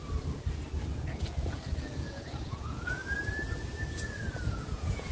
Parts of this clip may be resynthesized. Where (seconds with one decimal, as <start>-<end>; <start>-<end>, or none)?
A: 0.9-3.0; 4.5-5.1